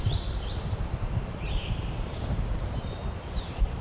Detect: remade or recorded remade